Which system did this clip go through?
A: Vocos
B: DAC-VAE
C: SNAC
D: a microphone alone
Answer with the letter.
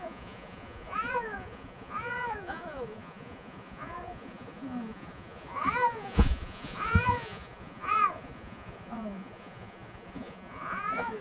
A